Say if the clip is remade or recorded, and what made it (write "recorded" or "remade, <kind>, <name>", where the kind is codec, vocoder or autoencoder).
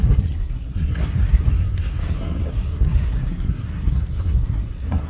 remade, codec, SNAC